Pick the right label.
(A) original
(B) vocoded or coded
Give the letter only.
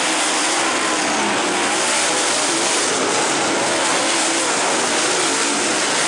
A